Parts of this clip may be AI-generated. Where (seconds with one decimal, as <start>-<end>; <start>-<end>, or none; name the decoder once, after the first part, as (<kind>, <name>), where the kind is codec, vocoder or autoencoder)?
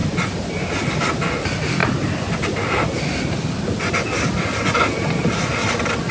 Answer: none